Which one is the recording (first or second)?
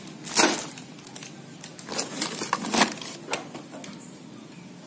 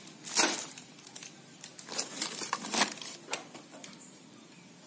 first